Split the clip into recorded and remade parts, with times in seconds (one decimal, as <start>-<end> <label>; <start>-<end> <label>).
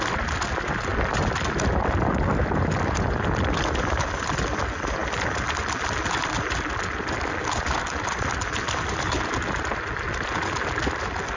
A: 0.0-0.9 recorded; 0.9-2.7 remade; 2.7-11.4 recorded